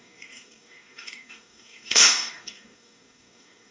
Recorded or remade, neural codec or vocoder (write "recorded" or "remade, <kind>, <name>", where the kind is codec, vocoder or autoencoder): remade, codec, DAC